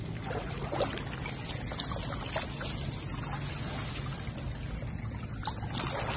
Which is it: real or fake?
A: real